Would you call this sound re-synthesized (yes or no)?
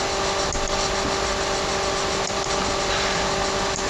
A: no